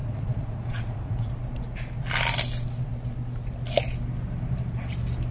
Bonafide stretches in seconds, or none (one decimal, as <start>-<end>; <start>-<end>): 1.3-5.3

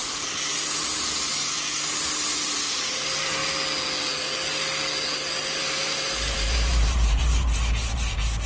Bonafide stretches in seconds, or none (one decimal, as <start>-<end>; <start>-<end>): 1.3-2.0; 3.4-5.6

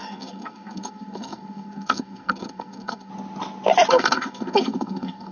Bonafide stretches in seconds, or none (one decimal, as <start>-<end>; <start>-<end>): 3.1-3.9

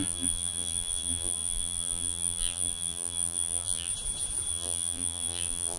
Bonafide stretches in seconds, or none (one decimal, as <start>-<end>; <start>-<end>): 3.9-4.5

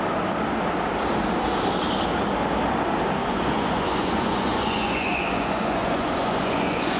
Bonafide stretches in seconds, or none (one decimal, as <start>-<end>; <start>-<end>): 0.0-3.2

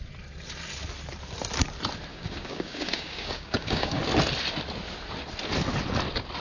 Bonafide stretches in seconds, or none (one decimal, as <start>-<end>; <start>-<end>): 0.0-2.1; 4.0-6.4